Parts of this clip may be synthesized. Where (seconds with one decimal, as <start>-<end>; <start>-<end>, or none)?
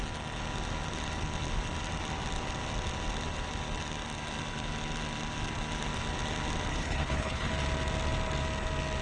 6.7-7.5